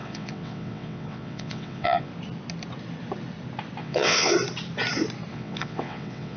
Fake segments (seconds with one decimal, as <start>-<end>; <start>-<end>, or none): 0.0-2.1; 3.8-4.3; 5.3-6.4